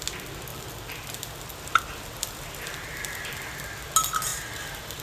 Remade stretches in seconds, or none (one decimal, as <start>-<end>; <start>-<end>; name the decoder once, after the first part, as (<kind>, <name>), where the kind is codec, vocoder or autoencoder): 0.5-3.5 (vocoder, BigVGAN v2); 4.3-5.0